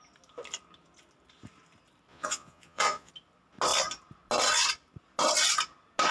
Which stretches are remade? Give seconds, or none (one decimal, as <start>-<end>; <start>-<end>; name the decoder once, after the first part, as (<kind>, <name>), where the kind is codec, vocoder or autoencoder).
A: 2.1-3.1 (vocoder, Vocos)